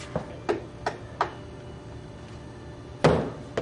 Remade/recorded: recorded